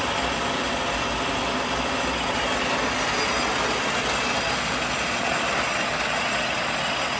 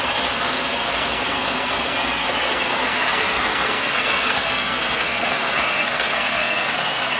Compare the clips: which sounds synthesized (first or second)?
second